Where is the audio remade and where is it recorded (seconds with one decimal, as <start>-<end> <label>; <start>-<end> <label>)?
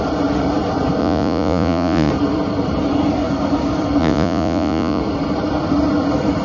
0.0-1.0 recorded; 1.0-2.1 remade; 2.1-4.0 recorded; 4.0-5.0 remade; 5.0-6.4 recorded